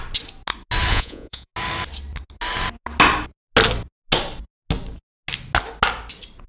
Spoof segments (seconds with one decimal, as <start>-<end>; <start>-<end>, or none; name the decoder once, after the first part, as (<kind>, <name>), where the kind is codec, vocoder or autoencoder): 0.9-1.5 (vocoder, Vocos)